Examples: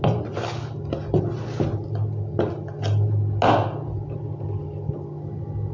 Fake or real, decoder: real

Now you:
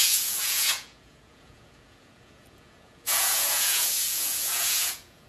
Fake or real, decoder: fake, vocoder, Vocos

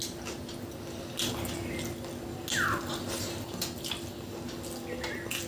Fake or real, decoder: real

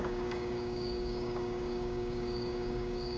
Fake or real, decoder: fake, codec, DAC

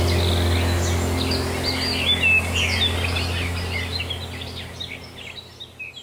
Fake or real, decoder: real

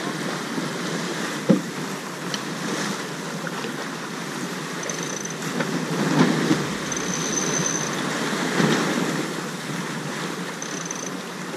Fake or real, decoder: real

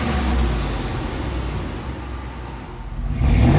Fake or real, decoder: real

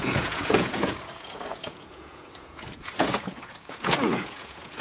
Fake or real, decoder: fake, vocoder, Vocos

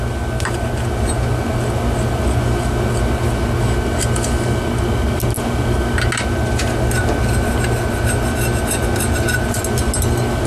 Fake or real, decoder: real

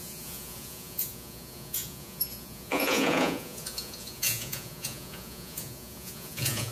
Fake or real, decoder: fake, vocoder, Vocos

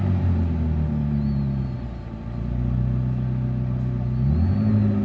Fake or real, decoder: real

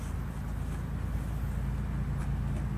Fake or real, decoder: real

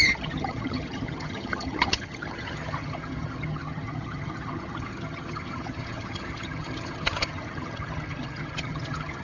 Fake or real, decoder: fake, vocoder, HiFi-GAN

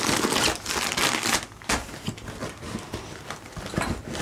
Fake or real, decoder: real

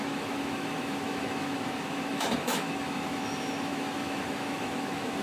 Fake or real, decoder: fake, autoencoder, DAC-VAE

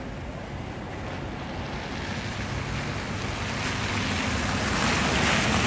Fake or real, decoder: real